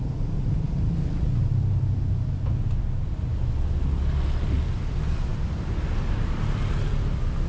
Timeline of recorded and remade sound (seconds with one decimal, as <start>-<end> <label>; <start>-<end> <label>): 0.0-5.3 recorded; 5.3-6.6 remade; 6.6-7.5 recorded